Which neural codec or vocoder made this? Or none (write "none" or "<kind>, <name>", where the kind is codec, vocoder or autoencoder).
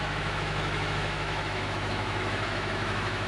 autoencoder, DAC-VAE